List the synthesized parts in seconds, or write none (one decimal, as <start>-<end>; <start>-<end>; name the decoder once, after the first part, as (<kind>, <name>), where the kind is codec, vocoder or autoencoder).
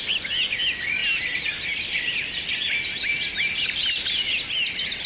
none